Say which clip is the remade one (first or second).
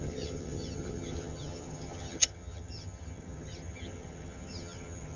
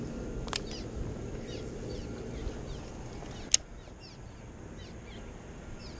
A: first